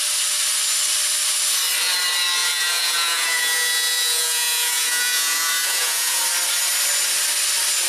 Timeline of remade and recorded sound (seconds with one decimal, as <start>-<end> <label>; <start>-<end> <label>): 0.0-2.4 recorded; 2.4-6.2 remade; 6.2-7.9 recorded